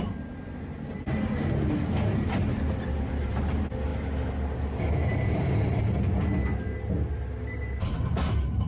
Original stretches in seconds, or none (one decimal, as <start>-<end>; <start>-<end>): 0.0-8.7